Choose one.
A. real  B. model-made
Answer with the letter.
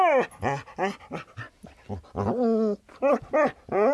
A